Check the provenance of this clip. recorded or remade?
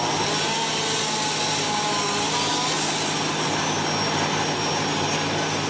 recorded